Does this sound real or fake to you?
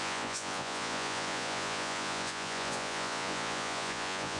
fake